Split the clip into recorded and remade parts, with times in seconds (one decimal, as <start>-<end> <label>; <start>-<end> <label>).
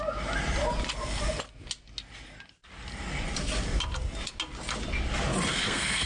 0.0-5.5 recorded; 5.5-6.1 remade